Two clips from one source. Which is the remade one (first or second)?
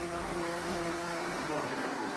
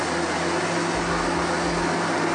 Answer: first